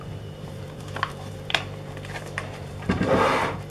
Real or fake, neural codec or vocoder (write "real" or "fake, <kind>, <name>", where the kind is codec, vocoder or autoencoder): fake, vocoder, BigVGAN v2